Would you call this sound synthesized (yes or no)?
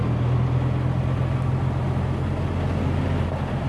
no